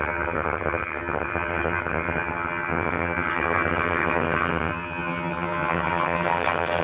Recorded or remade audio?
remade